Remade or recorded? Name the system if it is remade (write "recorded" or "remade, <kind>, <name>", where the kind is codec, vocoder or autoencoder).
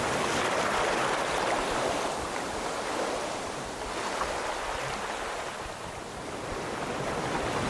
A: recorded